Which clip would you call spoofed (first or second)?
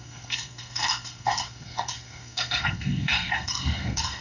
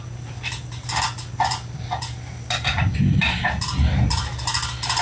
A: first